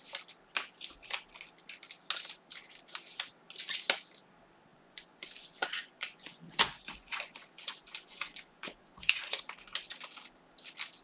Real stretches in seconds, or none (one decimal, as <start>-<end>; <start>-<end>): 0.0-4.7; 9.4-11.0